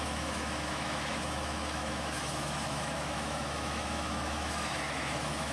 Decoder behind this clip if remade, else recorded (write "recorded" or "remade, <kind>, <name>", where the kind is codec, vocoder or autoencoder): remade, autoencoder, DAC-VAE